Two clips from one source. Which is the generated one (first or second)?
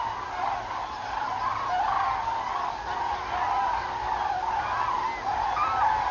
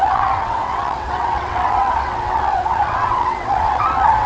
second